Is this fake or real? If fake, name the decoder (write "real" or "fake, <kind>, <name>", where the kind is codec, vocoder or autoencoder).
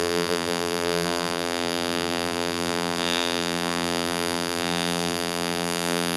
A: fake, vocoder, BigVGAN v2